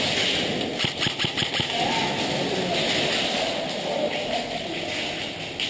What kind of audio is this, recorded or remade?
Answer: recorded